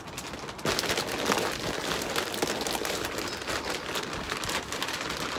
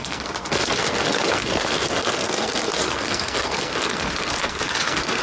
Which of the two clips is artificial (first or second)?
second